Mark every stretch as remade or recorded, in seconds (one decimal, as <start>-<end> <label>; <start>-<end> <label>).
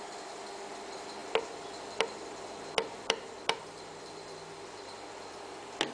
0.0-5.9 recorded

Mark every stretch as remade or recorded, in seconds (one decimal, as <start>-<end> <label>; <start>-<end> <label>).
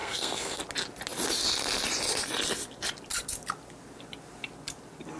0.0-0.6 remade; 0.6-5.2 recorded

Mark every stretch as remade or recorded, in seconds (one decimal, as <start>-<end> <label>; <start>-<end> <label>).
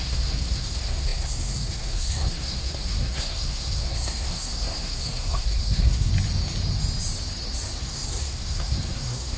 0.0-6.1 remade; 6.1-7.8 recorded; 7.8-9.4 remade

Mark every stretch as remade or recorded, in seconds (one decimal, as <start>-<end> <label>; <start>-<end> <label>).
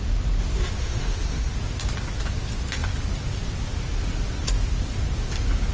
0.0-0.8 recorded; 0.8-1.5 remade; 1.5-5.7 recorded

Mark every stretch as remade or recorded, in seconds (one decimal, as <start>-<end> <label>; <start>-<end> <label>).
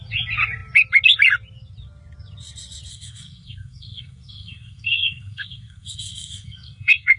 0.0-2.9 recorded; 2.9-7.2 remade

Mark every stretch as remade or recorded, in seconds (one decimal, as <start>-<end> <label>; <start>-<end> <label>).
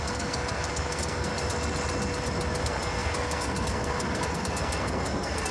0.0-1.3 remade; 1.3-2.6 recorded; 2.6-5.5 remade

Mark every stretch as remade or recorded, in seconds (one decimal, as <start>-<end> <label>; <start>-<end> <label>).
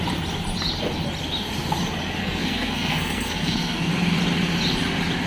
0.0-2.2 recorded; 2.2-3.9 remade; 3.9-5.3 recorded